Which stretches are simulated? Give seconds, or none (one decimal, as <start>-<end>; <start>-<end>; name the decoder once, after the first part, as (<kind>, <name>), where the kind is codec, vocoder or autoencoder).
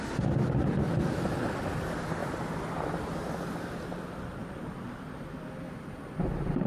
4.4-5.2 (vocoder, BigVGAN v2)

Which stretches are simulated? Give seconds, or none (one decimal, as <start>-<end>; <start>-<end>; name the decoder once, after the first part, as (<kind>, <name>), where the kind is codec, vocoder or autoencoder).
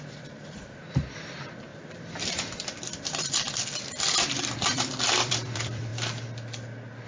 0.0-5.9 (vocoder, BigVGAN v2)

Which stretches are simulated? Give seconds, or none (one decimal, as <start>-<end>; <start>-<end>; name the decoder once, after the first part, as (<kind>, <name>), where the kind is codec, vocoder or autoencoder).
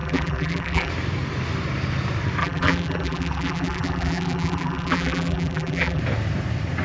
0.0-0.9 (vocoder, BigVGAN v2); 2.4-6.0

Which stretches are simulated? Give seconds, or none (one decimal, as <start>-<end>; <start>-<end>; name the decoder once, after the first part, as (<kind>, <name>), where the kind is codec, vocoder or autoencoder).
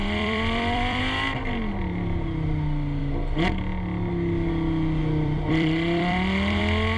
0.0-1.0 (vocoder, BigVGAN v2); 5.0-6.6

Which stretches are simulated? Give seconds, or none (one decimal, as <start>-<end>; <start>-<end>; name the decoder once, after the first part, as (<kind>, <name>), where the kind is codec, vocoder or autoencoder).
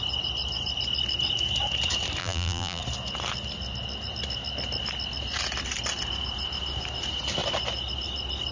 2.2-2.8 (vocoder, BigVGAN v2)